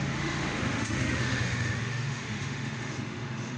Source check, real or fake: fake